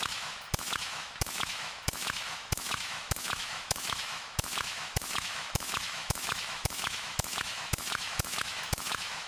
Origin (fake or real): fake